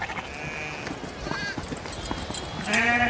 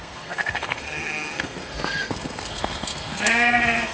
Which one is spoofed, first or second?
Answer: second